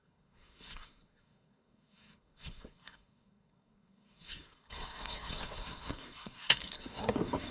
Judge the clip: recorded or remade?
remade